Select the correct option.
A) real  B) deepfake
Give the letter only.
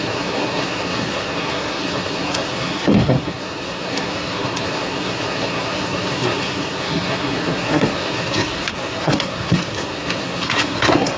B